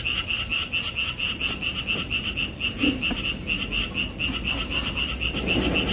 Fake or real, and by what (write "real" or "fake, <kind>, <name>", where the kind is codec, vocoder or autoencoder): real